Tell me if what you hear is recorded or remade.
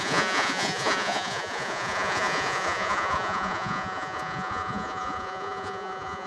remade